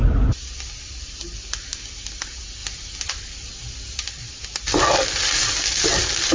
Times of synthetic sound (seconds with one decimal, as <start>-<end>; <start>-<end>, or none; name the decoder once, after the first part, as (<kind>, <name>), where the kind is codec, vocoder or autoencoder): none